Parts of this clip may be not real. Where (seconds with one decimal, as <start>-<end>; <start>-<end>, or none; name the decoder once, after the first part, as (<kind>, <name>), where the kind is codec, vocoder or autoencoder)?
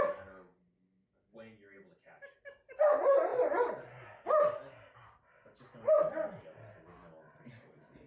none